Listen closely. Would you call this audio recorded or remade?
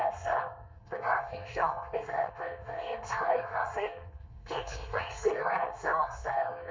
remade